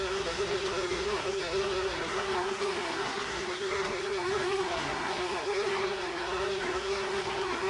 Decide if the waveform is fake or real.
fake